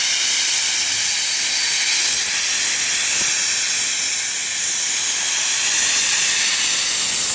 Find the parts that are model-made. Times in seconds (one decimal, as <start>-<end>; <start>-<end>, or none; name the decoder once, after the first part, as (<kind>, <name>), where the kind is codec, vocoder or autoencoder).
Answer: none